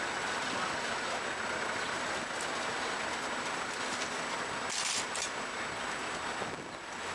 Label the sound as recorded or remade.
recorded